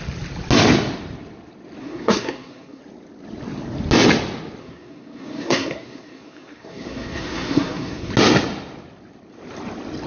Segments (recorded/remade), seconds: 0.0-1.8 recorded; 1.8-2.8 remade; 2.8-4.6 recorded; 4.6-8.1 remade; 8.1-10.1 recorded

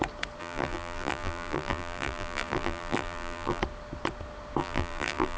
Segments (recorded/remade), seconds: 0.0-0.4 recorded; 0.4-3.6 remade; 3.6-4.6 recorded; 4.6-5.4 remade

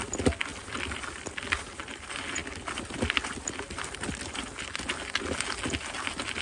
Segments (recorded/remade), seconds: 0.0-0.5 recorded; 0.5-1.3 remade; 1.3-2.4 recorded; 2.4-4.4 remade; 4.4-6.4 recorded

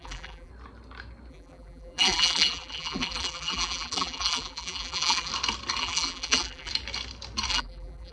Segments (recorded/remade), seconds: 0.0-0.5 remade; 0.5-1.3 recorded; 1.3-5.3 remade; 5.3-5.8 recorded; 5.8-6.7 remade; 6.7-7.5 recorded; 7.5-8.1 remade